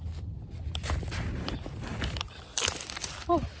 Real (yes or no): yes